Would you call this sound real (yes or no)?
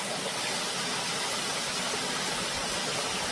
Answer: no